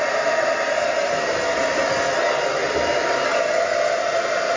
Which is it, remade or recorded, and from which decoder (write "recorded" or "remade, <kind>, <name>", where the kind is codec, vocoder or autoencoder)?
recorded